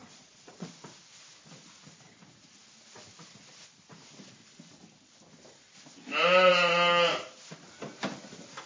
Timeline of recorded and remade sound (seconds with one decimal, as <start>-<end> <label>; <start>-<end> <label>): 0.0-0.7 remade; 0.7-8.7 recorded